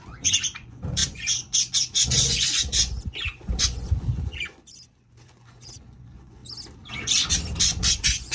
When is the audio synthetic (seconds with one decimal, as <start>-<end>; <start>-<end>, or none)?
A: 0.0-6.4; 7.6-8.3